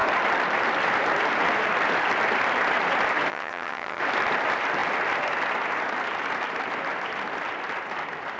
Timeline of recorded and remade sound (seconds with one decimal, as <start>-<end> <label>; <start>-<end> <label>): 0.0-3.3 recorded; 3.3-4.0 remade; 4.0-8.4 recorded